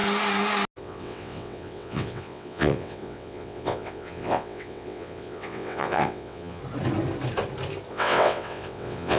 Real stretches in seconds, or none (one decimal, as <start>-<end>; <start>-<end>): 0.0-0.8; 6.6-7.9